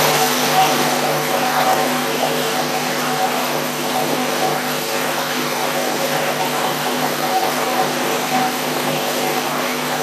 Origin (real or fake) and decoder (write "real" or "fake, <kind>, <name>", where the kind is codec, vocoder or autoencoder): fake, codec, DAC